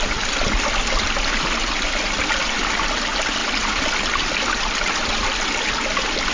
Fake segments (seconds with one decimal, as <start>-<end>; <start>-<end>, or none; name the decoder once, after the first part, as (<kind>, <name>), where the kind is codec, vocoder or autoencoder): 3.4-4.2 (vocoder, BigVGAN v2)